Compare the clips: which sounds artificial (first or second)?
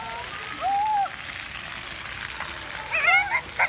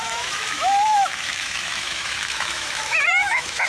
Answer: second